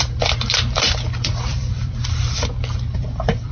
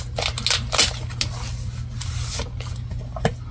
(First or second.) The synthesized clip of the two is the first